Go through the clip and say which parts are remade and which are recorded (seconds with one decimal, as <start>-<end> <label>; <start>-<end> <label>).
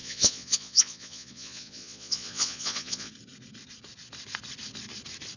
0.0-3.1 remade; 3.1-5.4 recorded